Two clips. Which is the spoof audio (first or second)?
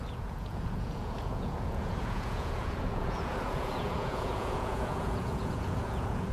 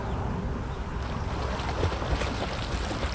first